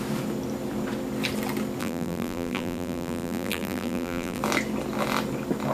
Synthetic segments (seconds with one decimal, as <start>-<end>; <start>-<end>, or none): 1.8-4.4